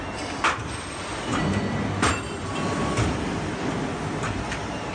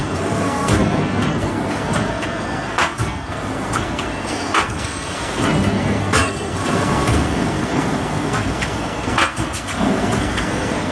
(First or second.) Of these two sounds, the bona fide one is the first